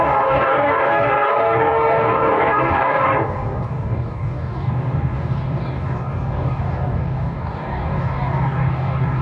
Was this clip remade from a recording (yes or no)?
yes